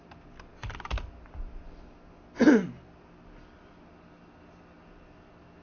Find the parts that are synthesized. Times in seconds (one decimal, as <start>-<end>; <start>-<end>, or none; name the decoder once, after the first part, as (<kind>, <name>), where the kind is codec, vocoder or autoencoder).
none